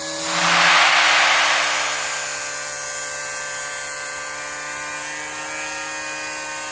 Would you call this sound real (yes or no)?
yes